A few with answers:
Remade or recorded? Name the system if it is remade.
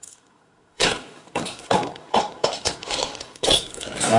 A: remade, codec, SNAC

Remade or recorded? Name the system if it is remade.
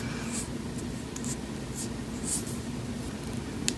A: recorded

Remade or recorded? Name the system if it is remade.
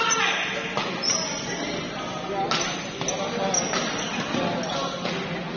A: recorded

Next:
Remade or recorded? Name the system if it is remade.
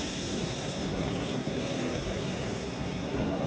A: remade, codec, SNAC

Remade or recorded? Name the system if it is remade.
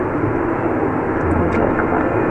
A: recorded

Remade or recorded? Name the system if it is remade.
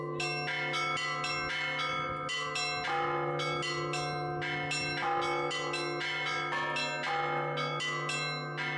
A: recorded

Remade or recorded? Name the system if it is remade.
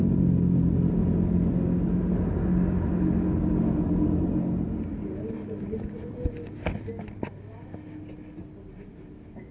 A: recorded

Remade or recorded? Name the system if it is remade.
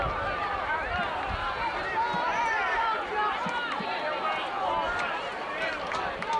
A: recorded